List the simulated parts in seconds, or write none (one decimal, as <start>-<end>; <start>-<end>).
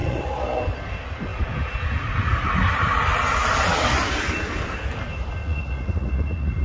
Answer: 0.0-0.6; 5.4-6.6